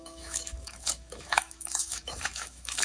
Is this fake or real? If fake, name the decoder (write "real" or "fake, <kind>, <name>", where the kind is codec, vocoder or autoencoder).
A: fake, autoencoder, DAC-VAE